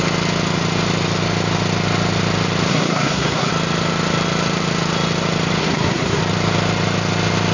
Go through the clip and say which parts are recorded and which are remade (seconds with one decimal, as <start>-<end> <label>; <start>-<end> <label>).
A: 0.0-2.7 recorded; 2.7-3.5 remade; 3.5-5.6 recorded; 5.6-6.2 remade; 6.2-7.5 recorded